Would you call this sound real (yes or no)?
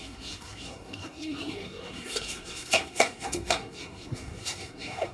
no